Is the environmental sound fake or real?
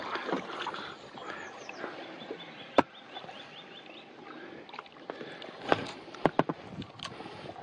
real